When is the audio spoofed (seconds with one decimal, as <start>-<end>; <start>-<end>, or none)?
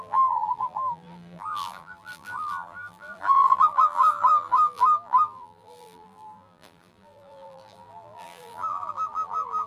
0.0-9.7